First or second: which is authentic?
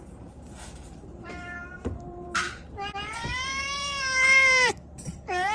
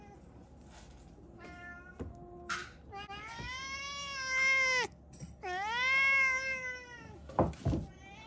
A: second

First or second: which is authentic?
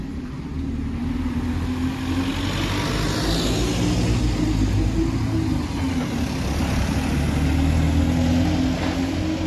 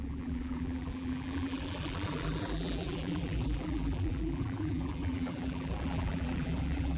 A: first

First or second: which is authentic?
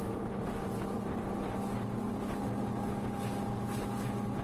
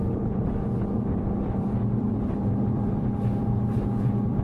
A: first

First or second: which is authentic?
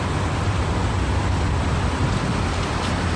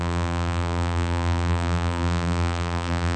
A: first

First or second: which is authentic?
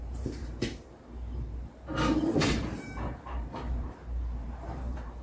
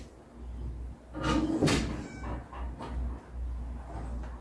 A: second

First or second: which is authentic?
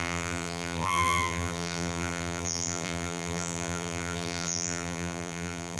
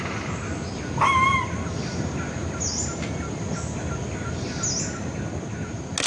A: second